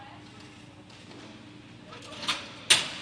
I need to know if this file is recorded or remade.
recorded